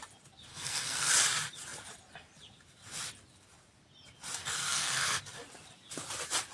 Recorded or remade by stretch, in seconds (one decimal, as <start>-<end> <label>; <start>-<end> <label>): 0.0-0.5 recorded; 0.5-1.1 remade; 1.1-4.4 recorded; 4.4-5.2 remade; 5.2-6.5 recorded